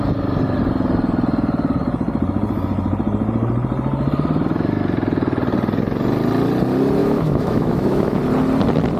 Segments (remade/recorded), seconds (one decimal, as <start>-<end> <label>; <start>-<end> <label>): 0.0-7.0 recorded; 7.0-8.2 remade; 8.2-9.0 recorded